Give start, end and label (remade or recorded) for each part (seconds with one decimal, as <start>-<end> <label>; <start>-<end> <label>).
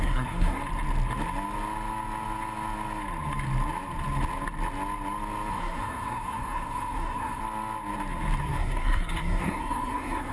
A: 0.0-0.6 remade; 0.6-5.5 recorded; 5.5-7.4 remade; 7.4-8.4 recorded; 8.4-10.3 remade